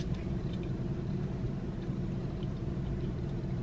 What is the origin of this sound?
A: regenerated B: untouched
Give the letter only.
A